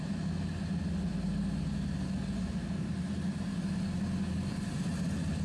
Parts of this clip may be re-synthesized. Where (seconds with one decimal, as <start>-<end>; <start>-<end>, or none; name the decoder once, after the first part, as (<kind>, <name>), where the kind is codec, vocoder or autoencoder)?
none